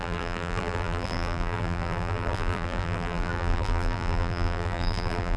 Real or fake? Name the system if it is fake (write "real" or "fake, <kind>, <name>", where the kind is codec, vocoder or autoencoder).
fake, vocoder, BigVGAN v2